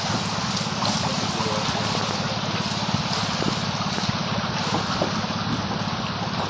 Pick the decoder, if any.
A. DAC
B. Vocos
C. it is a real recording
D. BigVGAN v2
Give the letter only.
C